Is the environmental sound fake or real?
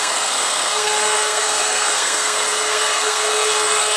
fake